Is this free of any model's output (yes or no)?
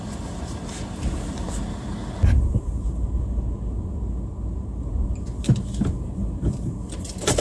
yes